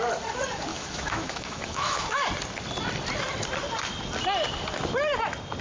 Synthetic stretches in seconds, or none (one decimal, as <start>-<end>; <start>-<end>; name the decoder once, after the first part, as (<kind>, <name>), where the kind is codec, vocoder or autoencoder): 0.7-2.3 (autoencoder, DAC-VAE)